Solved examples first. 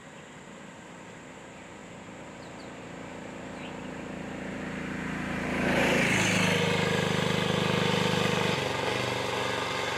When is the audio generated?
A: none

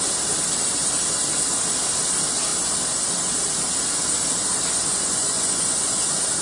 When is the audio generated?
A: 4.9-6.0 (vocoder, Vocos)